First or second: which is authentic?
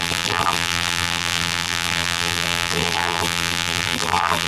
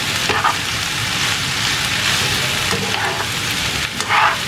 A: second